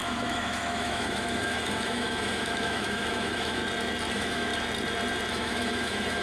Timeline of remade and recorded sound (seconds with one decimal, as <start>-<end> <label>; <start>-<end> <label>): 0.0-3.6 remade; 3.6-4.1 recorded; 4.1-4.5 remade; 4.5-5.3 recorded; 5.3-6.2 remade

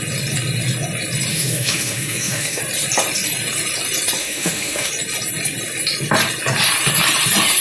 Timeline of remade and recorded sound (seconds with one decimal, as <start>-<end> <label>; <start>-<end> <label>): 0.0-1.3 recorded; 1.3-2.6 remade; 2.6-4.2 recorded; 4.2-4.9 remade; 4.9-7.6 recorded

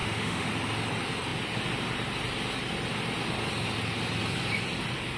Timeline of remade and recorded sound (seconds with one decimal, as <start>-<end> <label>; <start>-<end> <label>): 0.0-0.5 remade; 0.5-5.2 recorded